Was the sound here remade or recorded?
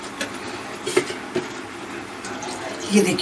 recorded